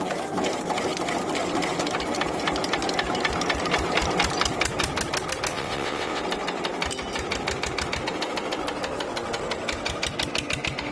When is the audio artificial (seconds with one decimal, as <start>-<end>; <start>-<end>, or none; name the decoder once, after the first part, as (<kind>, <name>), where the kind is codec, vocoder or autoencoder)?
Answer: 5.5-6.2 (vocoder, WaveNeXt)